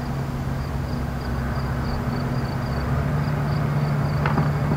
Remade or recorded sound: recorded